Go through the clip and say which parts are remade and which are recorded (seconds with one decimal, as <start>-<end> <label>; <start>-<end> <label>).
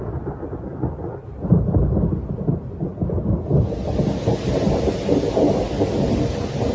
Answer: 0.0-6.7 recorded